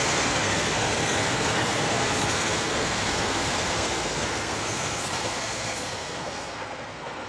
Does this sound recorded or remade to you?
remade